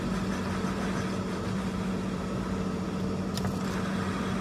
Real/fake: real